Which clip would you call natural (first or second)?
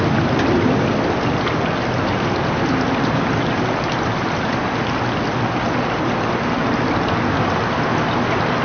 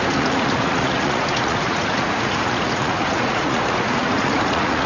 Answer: first